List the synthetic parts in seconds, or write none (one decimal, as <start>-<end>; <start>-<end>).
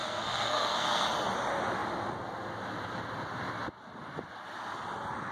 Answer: 0.0-1.1